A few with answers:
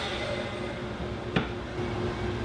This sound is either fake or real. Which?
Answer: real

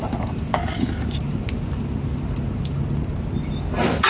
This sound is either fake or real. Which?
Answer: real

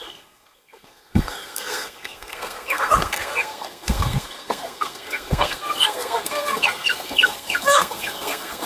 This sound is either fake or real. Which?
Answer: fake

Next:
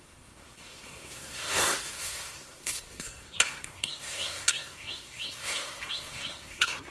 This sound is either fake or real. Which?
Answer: fake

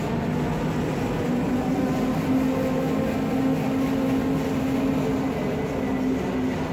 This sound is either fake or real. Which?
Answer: real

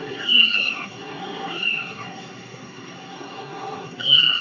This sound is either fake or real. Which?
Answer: fake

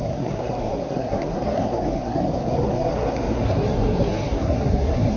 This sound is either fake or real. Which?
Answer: fake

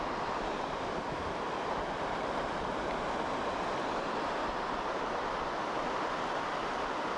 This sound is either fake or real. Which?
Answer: real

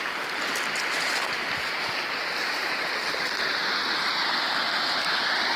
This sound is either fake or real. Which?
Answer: real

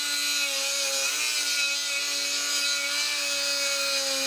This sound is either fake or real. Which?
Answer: real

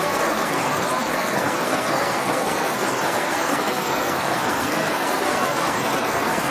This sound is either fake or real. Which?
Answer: fake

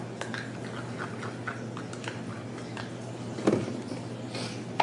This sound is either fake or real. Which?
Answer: real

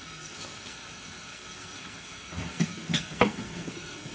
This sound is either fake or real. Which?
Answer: fake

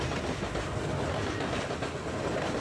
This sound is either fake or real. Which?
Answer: real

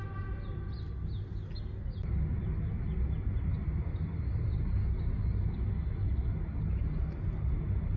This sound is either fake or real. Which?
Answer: real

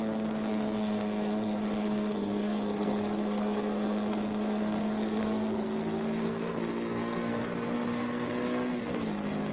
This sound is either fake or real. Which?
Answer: fake